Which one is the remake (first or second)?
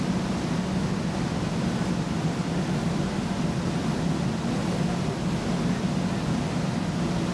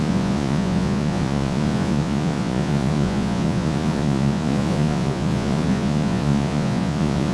second